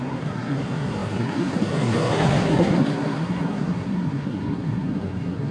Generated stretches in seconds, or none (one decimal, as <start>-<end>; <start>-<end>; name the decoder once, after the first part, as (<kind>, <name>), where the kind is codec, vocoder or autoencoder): 0.0-5.5 (codec, SNAC)